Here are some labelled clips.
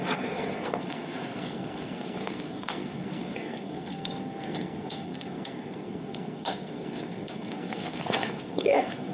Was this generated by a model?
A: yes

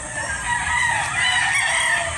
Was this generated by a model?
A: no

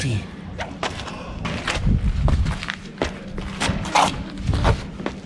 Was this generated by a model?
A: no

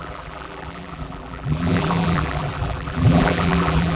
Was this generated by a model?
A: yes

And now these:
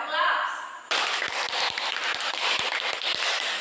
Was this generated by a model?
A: yes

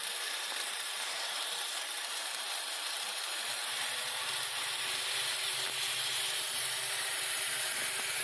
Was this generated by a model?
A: yes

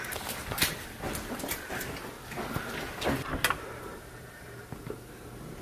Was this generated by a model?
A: no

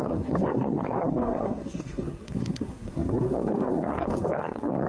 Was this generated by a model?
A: yes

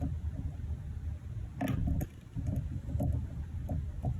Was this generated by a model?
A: no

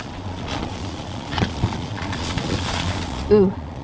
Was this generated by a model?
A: yes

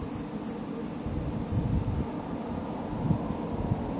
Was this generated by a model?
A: no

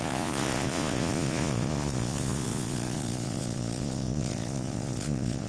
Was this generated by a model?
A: yes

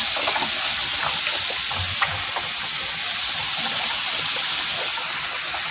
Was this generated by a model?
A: no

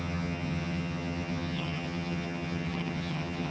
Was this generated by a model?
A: yes